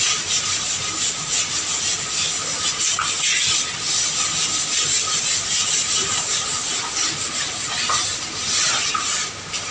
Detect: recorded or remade recorded